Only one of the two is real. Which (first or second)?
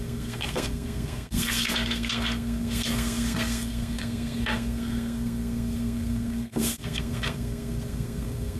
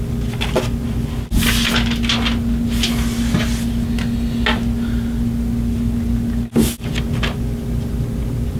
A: second